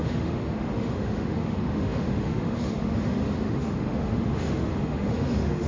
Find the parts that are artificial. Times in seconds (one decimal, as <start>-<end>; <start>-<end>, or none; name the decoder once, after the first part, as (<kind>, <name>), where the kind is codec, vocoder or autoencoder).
0.0-5.7 (autoencoder, DAC-VAE)